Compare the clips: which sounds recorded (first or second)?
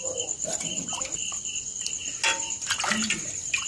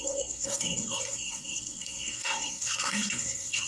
first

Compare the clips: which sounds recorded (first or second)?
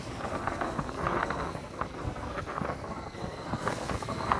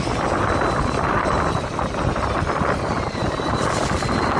second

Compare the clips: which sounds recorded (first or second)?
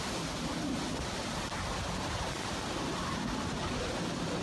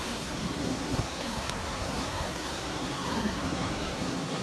first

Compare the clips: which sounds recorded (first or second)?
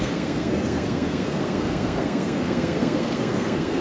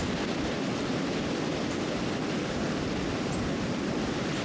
second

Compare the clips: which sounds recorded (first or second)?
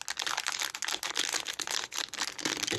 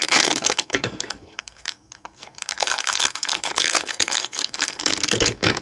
first